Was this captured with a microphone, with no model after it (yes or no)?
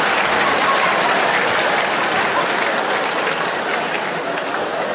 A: yes